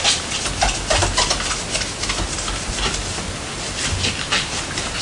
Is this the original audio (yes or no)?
yes